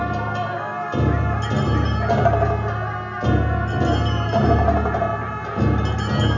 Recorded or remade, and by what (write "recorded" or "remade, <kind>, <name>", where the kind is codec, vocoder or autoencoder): recorded